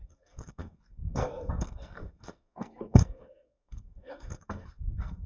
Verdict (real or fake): fake